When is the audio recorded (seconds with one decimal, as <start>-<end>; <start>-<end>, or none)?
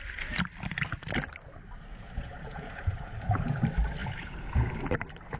0.0-1.9; 3.6-4.0; 4.7-5.4